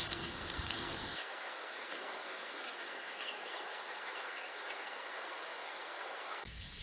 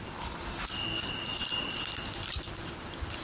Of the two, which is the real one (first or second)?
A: second